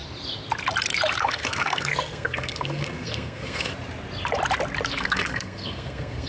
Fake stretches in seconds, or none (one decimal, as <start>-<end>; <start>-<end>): 1.2-3.7; 4.9-6.3